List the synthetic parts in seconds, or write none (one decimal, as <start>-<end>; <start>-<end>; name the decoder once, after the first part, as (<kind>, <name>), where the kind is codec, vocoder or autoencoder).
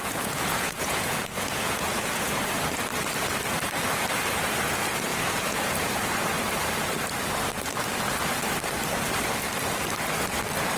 0.0-2.4 (vocoder, Vocos); 5.1-6.0